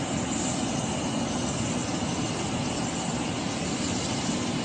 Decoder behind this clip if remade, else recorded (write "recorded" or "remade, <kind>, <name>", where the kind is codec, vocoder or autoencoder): recorded